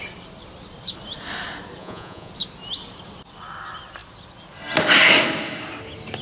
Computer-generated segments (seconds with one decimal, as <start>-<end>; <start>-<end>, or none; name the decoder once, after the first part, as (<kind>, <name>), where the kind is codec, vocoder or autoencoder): 1.8-2.3 (vocoder, Vocos)